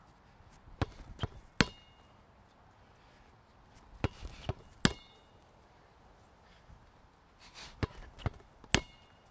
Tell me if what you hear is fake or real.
real